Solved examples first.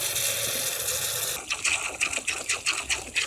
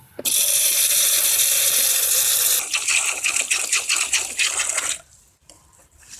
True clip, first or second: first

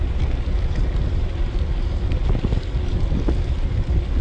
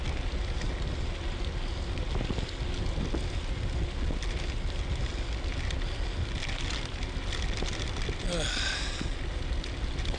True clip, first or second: second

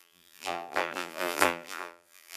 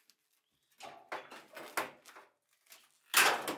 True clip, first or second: second